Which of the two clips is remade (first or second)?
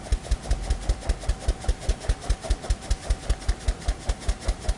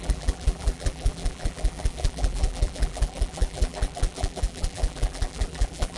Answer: second